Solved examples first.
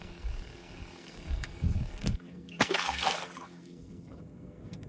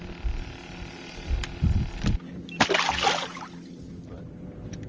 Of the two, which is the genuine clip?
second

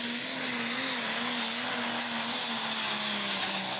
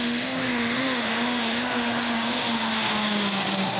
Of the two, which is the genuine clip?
first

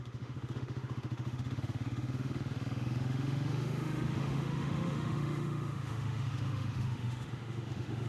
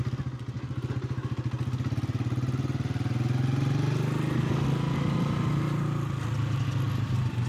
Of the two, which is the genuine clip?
second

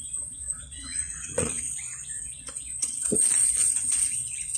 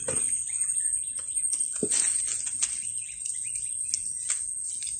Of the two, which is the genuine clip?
second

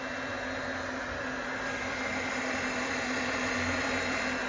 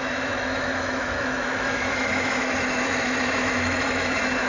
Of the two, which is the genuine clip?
first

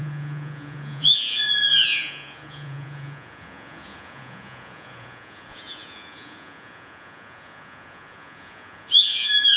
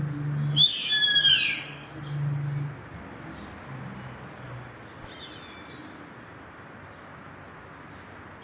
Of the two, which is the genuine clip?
second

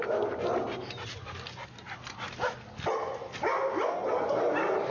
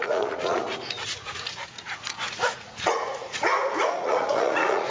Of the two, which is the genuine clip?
first